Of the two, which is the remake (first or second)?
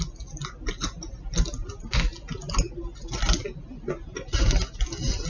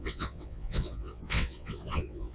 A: second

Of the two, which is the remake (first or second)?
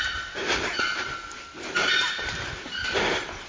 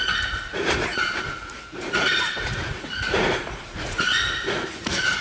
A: second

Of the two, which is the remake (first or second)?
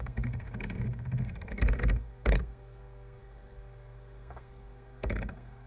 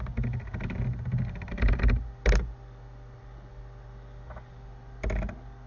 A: first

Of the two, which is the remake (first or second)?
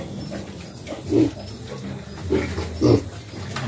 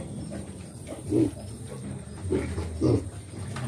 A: second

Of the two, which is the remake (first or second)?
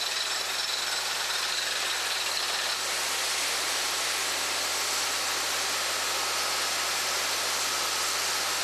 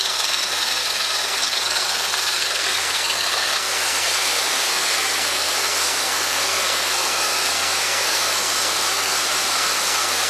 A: second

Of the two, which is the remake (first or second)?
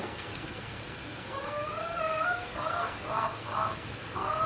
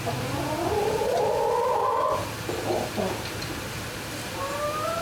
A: first